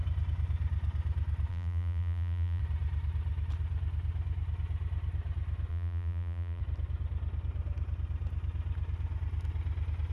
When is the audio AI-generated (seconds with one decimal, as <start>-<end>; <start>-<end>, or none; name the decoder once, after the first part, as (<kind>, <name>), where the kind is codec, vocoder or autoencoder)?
1.5-2.6 (vocoder, BigVGAN v2); 5.7-6.6